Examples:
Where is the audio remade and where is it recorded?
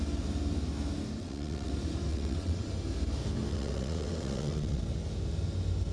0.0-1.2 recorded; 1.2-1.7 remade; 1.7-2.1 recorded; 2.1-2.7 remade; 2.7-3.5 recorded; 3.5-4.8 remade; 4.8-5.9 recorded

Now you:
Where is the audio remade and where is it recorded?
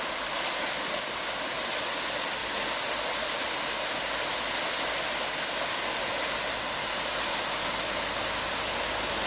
0.0-9.3 recorded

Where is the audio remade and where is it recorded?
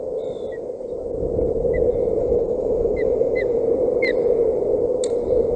0.0-2.2 recorded; 2.2-3.6 remade; 3.6-5.6 recorded